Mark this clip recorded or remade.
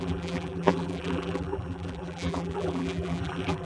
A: remade